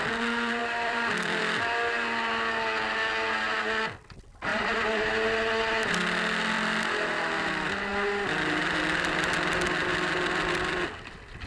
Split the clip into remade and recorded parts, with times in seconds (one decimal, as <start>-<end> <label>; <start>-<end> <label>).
0.0-0.6 recorded; 0.6-1.4 remade; 1.4-4.5 recorded; 4.5-5.0 remade; 5.0-11.5 recorded